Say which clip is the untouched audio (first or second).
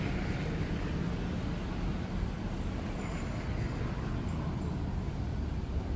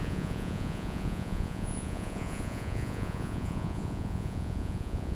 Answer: first